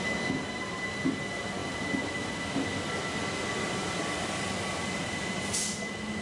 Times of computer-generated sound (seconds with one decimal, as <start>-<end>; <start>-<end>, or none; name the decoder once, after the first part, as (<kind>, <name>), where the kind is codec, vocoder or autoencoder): none